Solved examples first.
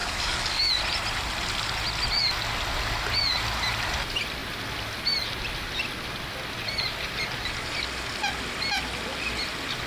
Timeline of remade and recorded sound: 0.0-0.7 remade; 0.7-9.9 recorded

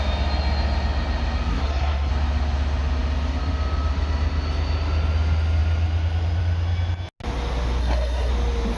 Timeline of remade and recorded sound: 0.0-1.5 recorded; 1.5-2.1 remade; 2.1-7.8 recorded; 7.8-8.3 remade; 8.3-8.8 recorded

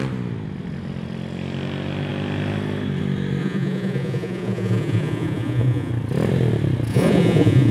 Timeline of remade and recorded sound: 0.0-3.4 recorded; 3.4-5.9 remade; 5.9-6.9 recorded; 6.9-7.7 remade

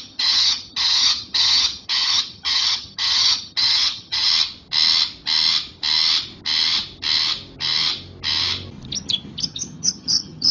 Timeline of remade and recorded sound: 0.0-4.3 remade; 4.3-9.4 recorded; 9.4-10.5 remade

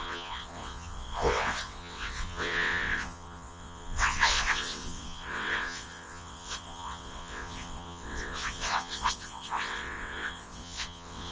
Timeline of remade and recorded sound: 0.0-11.3 remade